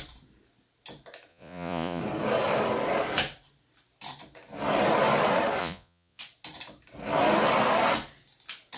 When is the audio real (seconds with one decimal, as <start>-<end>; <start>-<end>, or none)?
0.0-1.3; 2.0-5.6; 6.2-8.8